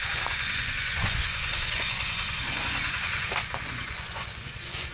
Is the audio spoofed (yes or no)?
yes